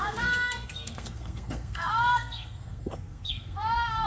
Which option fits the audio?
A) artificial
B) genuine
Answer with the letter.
A